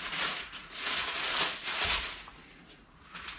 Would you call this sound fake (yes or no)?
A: yes